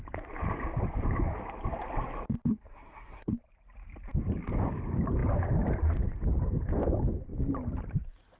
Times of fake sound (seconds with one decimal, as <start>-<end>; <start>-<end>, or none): 2.5-3.3